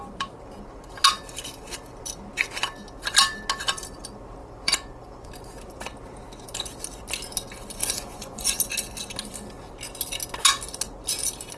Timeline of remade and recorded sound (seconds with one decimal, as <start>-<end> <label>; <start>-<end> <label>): 0.0-4.4 recorded; 4.4-5.3 remade; 5.3-7.8 recorded; 7.8-8.6 remade; 8.6-11.6 recorded